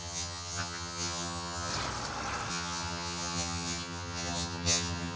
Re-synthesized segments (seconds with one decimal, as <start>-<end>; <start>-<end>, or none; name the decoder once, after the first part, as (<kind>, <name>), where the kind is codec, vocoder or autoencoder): 0.0-1.7 (vocoder, HiFi-GAN); 2.5-5.2